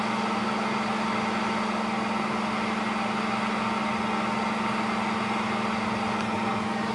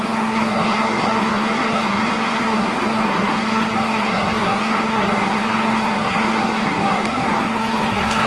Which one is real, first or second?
first